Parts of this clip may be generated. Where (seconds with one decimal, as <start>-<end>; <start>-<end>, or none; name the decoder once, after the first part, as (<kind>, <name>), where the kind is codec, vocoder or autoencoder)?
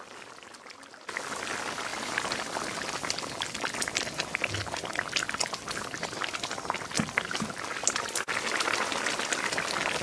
none